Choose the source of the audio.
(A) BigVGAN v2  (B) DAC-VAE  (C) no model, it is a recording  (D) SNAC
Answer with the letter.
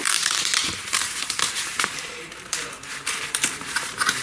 A